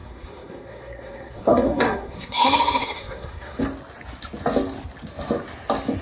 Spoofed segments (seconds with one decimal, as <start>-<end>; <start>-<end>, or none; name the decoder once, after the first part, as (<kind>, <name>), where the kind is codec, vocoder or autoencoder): 0.0-3.6 (codec, SNAC)